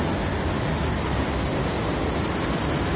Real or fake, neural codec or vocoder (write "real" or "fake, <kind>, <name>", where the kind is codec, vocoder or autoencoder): real